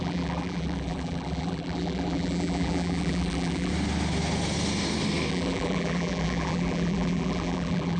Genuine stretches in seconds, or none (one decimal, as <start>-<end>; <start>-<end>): 3.7-5.3